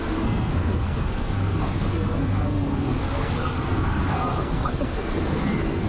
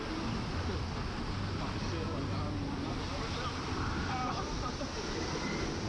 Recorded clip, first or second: second